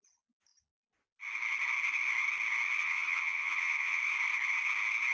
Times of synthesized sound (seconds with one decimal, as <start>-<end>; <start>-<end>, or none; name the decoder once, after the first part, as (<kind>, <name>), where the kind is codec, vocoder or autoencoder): 2.8-4.0 (vocoder, HiFi-GAN)